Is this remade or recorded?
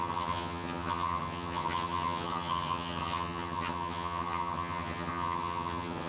remade